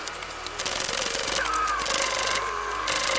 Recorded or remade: recorded